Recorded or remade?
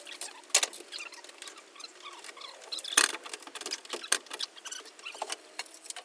recorded